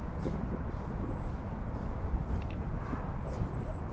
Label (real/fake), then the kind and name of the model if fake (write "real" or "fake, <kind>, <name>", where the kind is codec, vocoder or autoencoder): real